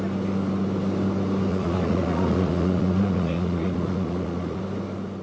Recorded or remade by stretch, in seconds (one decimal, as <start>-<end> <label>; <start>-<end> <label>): 0.0-1.5 recorded; 1.5-4.6 remade; 4.6-5.2 recorded